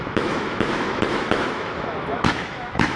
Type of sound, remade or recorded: remade